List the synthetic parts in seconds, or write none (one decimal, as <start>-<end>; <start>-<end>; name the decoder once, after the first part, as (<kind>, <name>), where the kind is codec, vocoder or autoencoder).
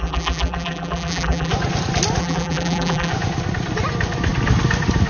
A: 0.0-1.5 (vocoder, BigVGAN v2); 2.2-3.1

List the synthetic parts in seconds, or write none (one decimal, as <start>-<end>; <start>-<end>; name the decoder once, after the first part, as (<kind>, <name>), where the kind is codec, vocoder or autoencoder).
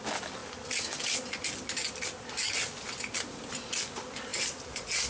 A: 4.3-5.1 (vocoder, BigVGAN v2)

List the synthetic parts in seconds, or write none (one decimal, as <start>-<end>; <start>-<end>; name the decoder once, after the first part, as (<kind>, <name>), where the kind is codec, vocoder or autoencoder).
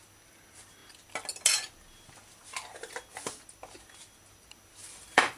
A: 4.8-5.4 (vocoder, BigVGAN v2)